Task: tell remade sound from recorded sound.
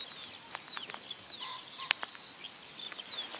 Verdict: recorded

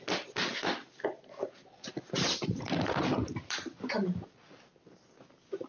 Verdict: recorded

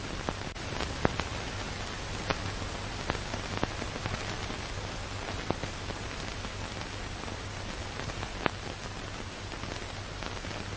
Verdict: recorded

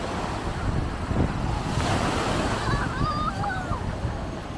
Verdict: recorded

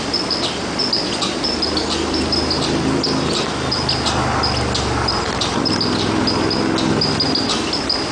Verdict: recorded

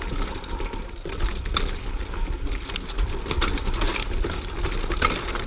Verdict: recorded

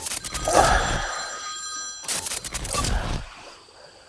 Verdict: remade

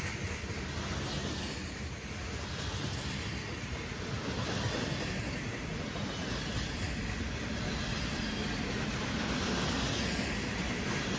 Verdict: recorded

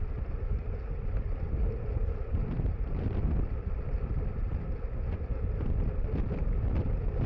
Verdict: recorded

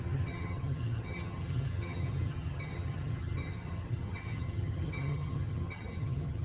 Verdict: remade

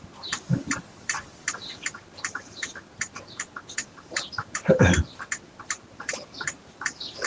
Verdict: remade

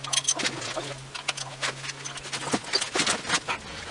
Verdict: recorded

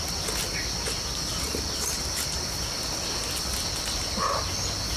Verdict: recorded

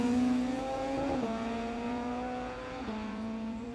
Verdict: remade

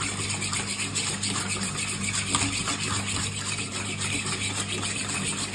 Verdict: recorded